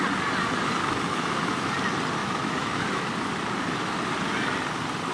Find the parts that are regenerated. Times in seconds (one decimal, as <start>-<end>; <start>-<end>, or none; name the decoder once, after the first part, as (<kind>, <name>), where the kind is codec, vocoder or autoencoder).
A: 1.1-1.7 (autoencoder, DAC-VAE); 2.2-3.1